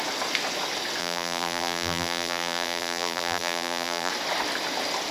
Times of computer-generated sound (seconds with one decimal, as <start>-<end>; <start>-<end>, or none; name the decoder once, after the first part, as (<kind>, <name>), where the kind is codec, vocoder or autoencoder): 1.0-4.1 (vocoder, BigVGAN v2)